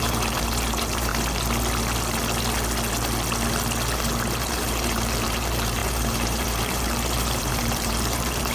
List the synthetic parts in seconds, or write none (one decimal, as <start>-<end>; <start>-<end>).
0.0-1.1; 4.5-8.5